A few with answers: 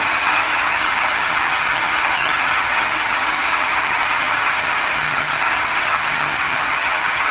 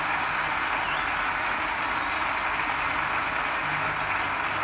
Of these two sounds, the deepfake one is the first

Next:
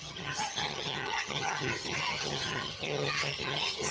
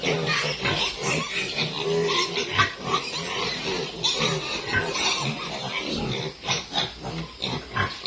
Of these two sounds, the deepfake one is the first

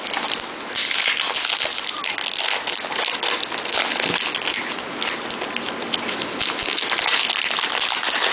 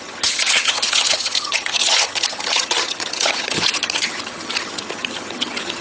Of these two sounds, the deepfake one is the second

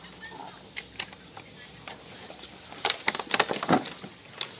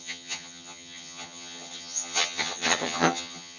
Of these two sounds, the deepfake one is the second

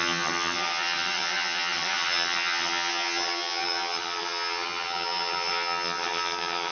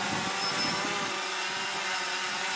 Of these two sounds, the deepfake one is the first